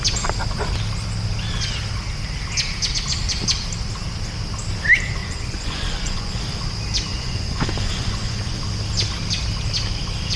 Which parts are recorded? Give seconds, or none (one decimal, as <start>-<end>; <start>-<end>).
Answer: 0.0-5.2; 6.4-7.1; 8.6-10.4